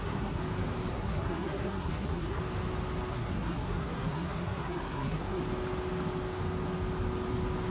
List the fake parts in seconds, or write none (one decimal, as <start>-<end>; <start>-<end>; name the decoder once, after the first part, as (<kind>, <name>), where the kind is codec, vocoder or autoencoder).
0.0-0.4 (codec, SNAC); 0.9-2.4; 3.1-5.4